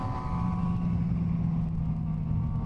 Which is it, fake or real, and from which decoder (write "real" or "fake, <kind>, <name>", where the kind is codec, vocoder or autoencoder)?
real